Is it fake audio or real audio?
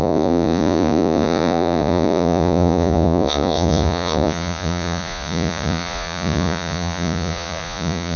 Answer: fake